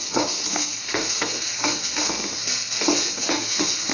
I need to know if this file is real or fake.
fake